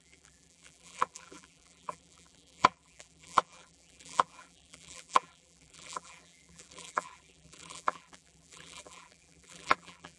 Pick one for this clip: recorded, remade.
remade